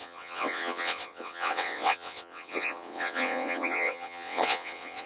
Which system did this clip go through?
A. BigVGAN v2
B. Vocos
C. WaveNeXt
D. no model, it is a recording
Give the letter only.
C